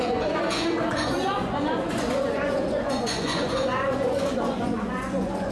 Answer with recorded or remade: remade